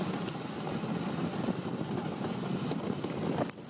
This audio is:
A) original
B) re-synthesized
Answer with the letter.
A